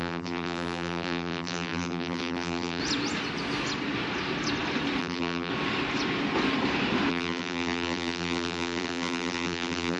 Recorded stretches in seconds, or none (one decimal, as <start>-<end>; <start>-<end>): 2.8-5.0; 5.5-7.1